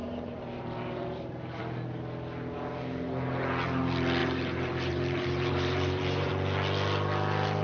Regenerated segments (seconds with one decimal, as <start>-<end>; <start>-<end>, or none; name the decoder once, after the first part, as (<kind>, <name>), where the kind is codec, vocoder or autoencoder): 0.0-1.6 (vocoder, BigVGAN v2); 4.2-6.3